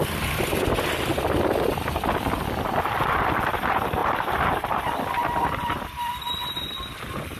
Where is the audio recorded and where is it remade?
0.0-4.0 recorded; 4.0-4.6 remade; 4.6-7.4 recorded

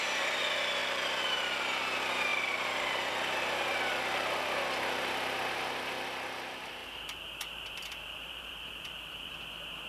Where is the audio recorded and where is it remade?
0.0-0.8 recorded; 0.8-1.4 remade; 1.4-2.3 recorded; 2.3-3.1 remade; 3.1-6.8 recorded; 6.8-9.3 remade; 9.3-9.9 recorded

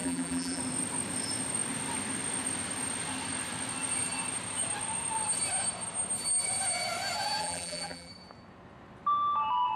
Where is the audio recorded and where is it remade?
0.0-0.6 remade; 0.6-7.4 recorded; 7.4-8.1 remade; 8.1-9.8 recorded

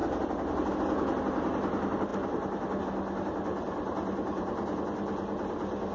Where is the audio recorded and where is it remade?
0.0-0.7 remade; 0.7-3.5 recorded; 3.5-4.8 remade; 4.8-5.9 recorded